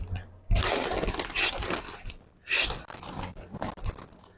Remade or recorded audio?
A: recorded